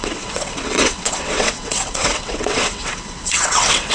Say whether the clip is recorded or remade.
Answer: remade